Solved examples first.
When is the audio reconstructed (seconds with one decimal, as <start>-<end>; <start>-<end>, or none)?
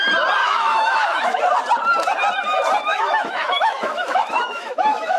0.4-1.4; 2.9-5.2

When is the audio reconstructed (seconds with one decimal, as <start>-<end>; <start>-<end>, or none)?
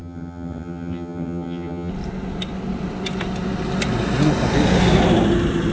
0.0-1.9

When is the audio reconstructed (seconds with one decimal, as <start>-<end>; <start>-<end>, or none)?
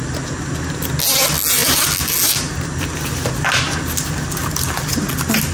none